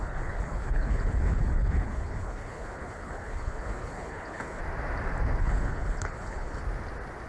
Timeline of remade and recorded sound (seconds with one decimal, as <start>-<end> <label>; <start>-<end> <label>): 0.0-4.6 remade; 4.6-5.4 recorded; 5.4-6.6 remade; 6.6-7.3 recorded